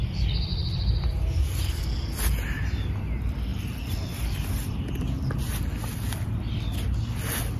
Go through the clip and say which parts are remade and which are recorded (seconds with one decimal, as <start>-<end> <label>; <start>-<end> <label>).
0.0-7.6 recorded